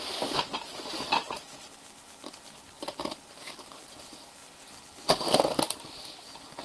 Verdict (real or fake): real